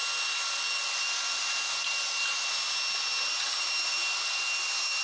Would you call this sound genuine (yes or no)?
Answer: yes